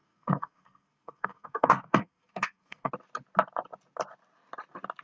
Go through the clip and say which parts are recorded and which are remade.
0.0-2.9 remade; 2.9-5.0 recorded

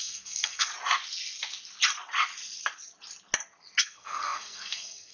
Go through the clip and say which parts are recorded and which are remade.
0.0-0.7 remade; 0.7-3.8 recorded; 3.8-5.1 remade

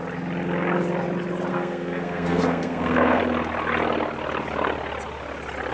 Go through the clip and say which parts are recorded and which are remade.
0.0-1.5 recorded; 1.5-3.2 remade; 3.2-5.7 recorded

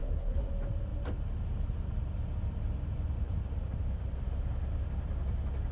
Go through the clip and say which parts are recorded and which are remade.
0.0-0.5 remade; 0.5-5.7 recorded